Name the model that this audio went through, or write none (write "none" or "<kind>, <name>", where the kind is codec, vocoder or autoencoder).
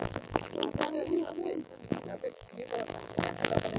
vocoder, BigVGAN v2